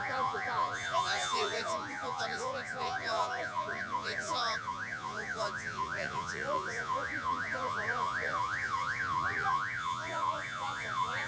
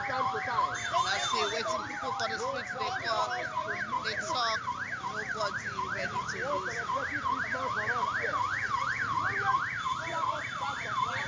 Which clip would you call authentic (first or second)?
second